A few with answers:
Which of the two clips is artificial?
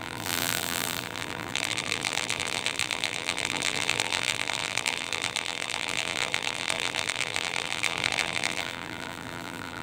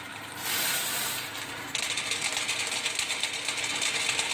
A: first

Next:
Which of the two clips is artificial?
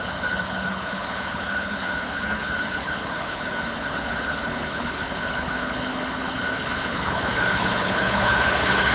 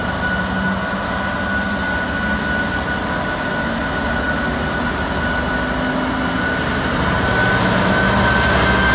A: first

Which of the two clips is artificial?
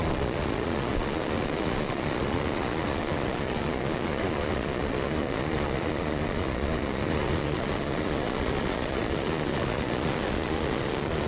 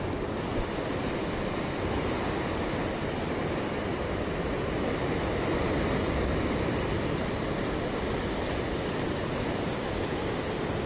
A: first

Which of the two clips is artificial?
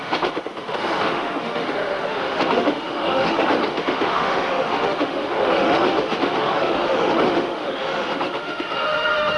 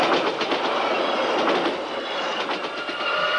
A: first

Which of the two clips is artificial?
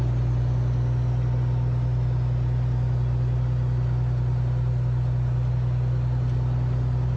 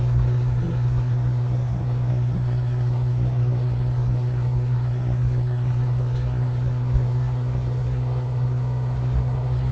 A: second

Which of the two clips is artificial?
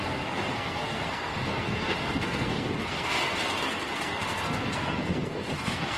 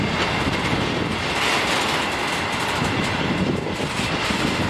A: first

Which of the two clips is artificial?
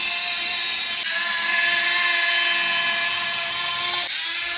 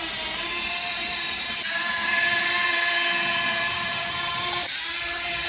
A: second